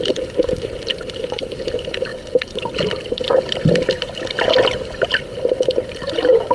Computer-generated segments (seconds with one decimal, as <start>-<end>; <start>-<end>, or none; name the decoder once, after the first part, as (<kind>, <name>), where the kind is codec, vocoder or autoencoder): 0.0-2.1 (vocoder, BigVGAN v2); 5.9-6.5